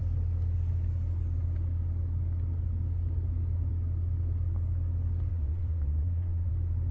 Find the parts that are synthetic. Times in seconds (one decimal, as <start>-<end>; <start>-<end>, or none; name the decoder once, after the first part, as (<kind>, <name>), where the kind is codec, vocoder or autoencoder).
5.3-6.5 (vocoder, Vocos)